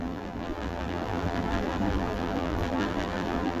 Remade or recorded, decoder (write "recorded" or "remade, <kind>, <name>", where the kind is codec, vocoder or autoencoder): remade, vocoder, BigVGAN v2